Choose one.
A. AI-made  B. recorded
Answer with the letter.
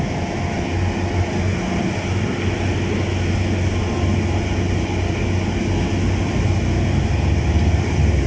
B